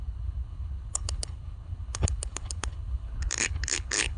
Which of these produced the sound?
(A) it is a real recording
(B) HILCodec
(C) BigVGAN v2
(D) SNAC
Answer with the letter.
B